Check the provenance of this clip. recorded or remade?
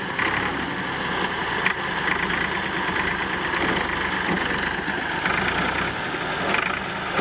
recorded